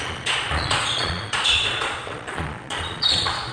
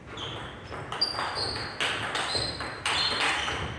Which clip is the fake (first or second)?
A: first